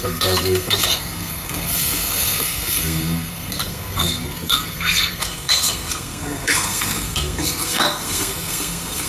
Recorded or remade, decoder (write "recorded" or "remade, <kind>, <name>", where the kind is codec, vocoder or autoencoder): remade, codec, SNAC